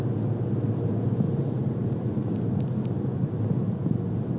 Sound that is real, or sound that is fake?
real